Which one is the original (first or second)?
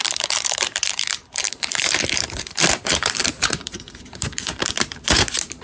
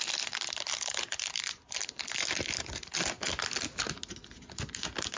second